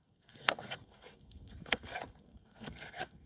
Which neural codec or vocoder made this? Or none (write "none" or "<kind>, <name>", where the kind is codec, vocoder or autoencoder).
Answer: codec, SNAC